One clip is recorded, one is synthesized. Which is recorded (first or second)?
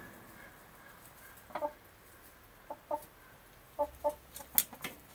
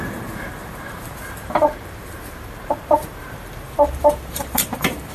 first